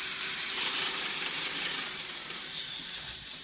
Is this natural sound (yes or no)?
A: no